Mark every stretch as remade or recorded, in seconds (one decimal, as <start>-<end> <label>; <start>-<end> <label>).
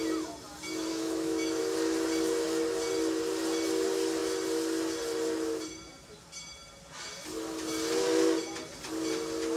0.0-0.9 recorded; 0.9-1.6 remade; 1.6-9.6 recorded